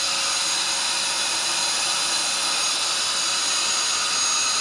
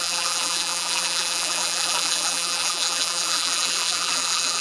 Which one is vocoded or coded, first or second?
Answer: second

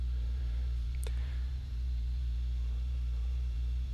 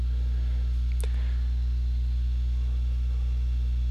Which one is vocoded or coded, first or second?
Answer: first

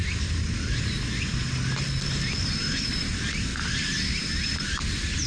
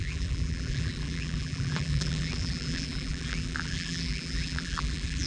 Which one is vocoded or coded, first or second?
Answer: second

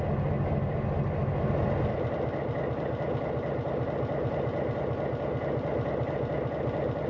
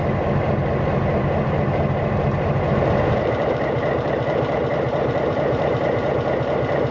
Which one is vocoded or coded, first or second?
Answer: second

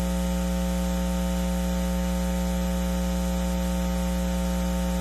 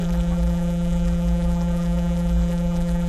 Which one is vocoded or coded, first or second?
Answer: second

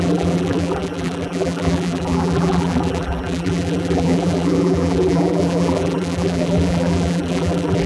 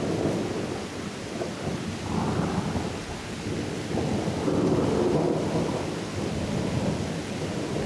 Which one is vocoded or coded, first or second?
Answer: first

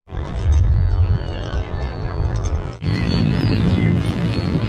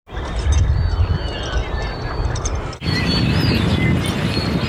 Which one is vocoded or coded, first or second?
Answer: first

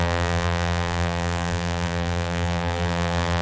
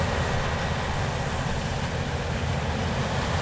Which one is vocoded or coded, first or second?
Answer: first